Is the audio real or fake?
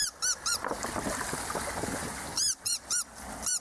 real